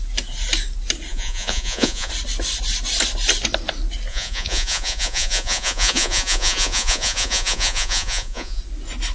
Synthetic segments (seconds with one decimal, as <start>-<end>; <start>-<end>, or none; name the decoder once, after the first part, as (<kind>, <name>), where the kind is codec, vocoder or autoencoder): 1.1-2.1 (vocoder, Vocos); 4.1-8.6